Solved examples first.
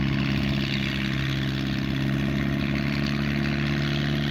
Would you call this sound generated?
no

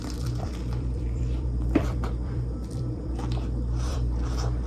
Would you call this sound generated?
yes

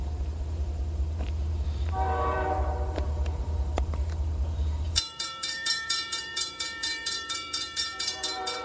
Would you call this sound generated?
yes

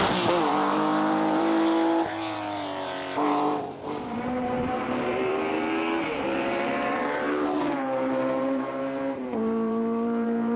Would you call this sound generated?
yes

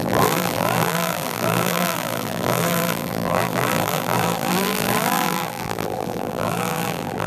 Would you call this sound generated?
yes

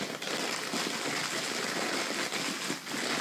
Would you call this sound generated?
no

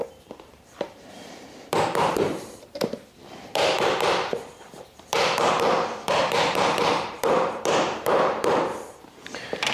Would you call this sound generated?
yes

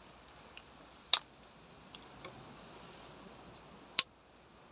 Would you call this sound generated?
no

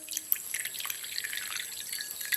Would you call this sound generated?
no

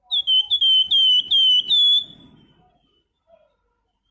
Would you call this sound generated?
no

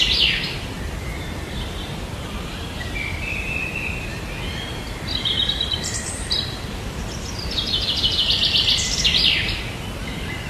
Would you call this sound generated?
yes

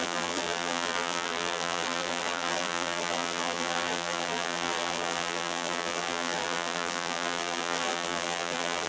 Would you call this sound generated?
yes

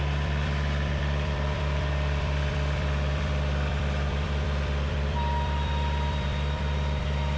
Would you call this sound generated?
yes